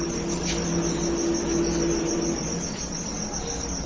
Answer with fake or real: real